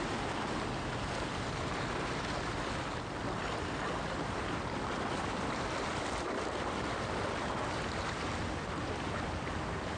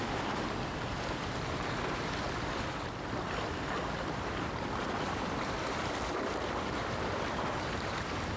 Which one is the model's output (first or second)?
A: second